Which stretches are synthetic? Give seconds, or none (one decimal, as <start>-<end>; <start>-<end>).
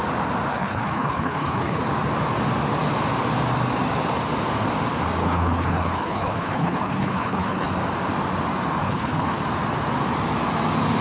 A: 0.5-1.8; 5.2-7.7; 8.8-9.4